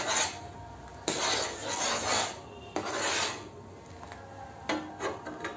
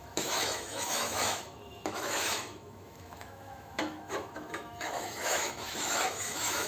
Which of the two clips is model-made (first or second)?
second